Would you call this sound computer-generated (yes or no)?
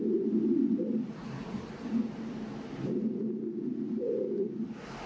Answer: no